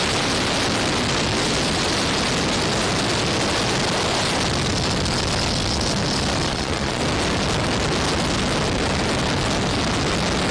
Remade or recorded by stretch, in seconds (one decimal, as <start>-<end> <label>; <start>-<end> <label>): 0.0-6.5 recorded; 6.5-7.0 remade; 7.0-10.5 recorded